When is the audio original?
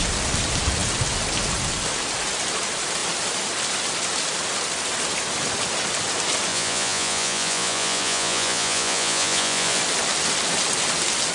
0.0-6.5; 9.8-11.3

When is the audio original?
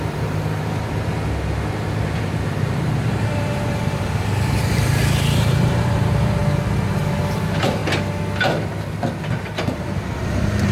6.4-7.0; 7.8-9.3